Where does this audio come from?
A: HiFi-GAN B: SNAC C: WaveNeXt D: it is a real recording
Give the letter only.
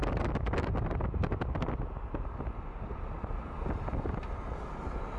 D